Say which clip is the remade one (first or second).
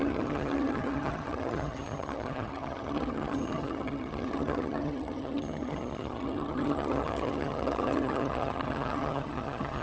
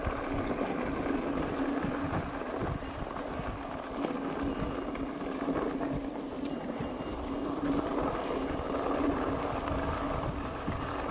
first